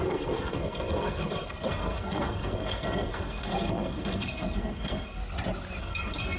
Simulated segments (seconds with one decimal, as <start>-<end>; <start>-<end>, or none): 0.0-5.2; 5.8-6.4